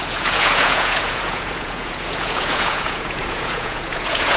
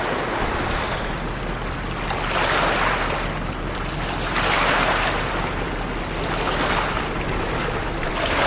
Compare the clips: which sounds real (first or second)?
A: second